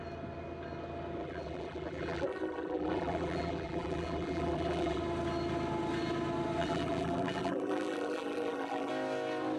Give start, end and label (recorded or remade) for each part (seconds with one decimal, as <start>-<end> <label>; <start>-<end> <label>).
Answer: 0.0-1.2 recorded; 1.2-5.0 remade; 5.0-6.6 recorded; 6.6-8.9 remade; 8.9-9.6 recorded